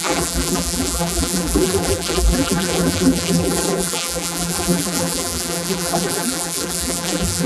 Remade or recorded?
remade